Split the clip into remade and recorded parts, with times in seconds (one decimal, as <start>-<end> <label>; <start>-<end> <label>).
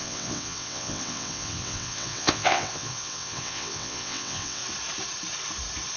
0.0-4.6 remade; 4.6-6.0 recorded